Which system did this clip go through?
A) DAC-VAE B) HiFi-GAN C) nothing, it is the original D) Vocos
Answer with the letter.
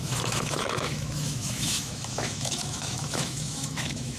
A